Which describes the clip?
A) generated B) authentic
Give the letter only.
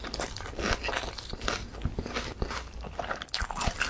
B